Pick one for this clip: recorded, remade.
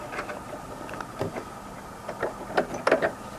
recorded